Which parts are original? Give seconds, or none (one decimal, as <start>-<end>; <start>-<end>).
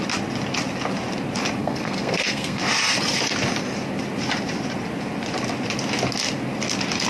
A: 0.0-1.6; 2.6-7.1